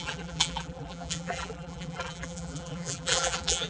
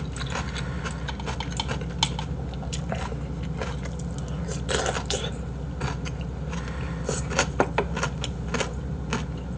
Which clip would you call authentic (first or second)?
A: second